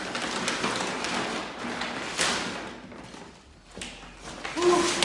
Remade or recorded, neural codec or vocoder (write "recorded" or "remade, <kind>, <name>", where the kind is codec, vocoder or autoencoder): recorded